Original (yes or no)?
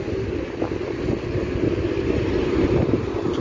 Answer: yes